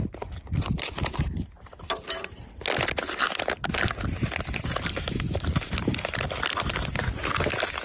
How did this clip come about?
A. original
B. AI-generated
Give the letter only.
A